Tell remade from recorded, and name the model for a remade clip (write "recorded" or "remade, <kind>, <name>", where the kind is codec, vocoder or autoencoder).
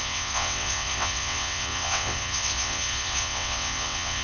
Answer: remade, vocoder, WaveNeXt